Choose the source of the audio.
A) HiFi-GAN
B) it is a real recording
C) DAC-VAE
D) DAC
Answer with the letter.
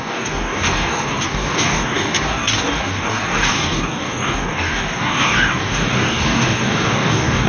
D